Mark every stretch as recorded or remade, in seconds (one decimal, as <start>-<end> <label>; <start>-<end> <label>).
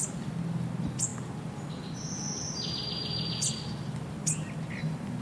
0.0-5.2 recorded